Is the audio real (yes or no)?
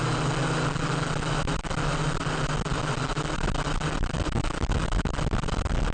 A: yes